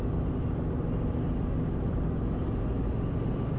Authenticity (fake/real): real